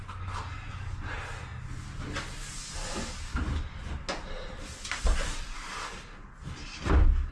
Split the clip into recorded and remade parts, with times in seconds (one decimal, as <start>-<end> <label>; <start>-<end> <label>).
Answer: 0.0-7.3 recorded